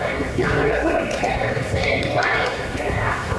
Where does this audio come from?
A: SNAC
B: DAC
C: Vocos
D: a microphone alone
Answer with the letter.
A